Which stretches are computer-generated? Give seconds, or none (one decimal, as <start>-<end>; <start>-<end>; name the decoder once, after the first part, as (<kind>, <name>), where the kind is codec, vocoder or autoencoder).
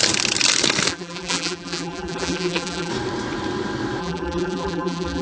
0.9-2.9 (vocoder, BigVGAN v2); 4.0-5.2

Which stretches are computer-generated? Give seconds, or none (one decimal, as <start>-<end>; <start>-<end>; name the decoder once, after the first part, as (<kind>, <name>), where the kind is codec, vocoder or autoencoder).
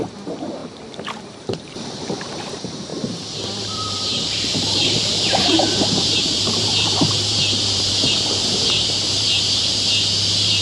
0.0-0.6 (vocoder, BigVGAN v2); 1.2-10.6